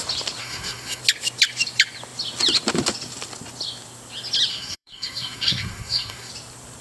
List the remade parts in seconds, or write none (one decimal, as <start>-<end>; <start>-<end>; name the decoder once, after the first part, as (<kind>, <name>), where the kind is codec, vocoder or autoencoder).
0.4-1.0 (codec, SNAC); 4.5-6.3